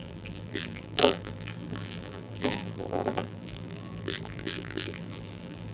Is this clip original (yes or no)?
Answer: no